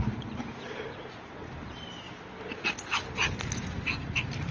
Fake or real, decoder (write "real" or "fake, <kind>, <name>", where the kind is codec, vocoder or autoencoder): real